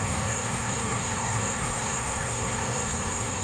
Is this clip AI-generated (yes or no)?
yes